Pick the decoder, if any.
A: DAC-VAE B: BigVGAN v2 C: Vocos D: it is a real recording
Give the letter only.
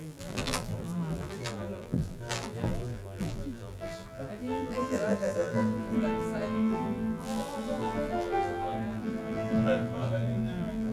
B